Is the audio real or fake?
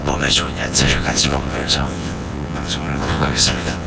fake